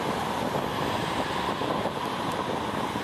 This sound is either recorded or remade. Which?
recorded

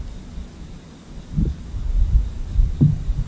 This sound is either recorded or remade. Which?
recorded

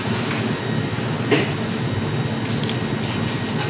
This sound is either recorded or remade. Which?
recorded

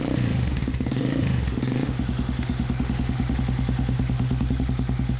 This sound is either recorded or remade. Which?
remade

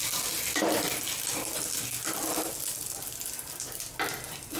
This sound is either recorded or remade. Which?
recorded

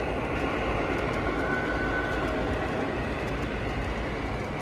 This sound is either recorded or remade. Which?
recorded